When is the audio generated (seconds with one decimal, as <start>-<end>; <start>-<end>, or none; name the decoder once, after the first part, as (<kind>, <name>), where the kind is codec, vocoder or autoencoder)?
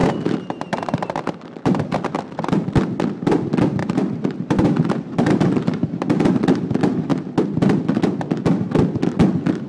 0.0-2.7 (vocoder, BigVGAN v2); 3.8-6.4